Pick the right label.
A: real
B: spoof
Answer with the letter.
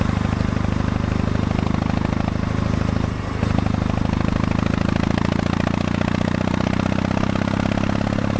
A